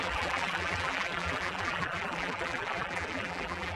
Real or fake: fake